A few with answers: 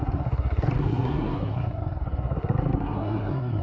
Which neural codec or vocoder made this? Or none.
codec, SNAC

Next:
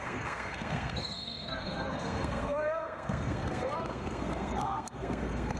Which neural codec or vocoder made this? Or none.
codec, SNAC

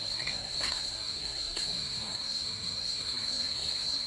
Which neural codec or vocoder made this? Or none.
codec, SNAC